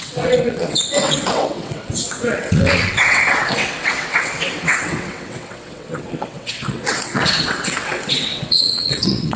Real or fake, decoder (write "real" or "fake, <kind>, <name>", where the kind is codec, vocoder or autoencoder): fake, vocoder, WaveNeXt